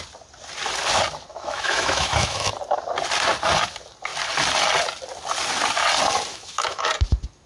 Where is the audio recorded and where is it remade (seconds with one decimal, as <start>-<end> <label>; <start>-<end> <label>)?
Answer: 0.0-1.3 recorded; 1.3-2.5 remade; 2.5-6.3 recorded; 6.3-6.9 remade; 6.9-7.5 recorded